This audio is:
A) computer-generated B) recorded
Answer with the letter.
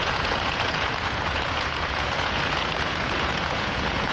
A